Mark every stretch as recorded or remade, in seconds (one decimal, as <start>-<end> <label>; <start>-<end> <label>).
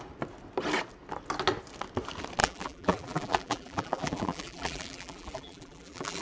0.0-2.4 recorded; 2.4-6.2 remade